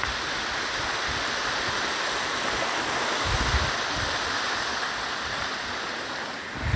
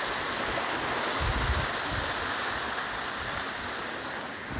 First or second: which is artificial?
first